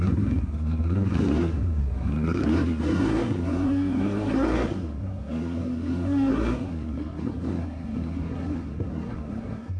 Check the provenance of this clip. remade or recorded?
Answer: remade